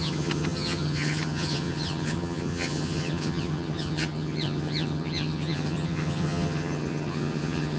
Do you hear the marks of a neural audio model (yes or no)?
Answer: yes